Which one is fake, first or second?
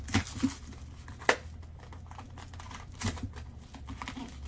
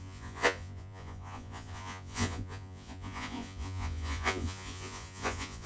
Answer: second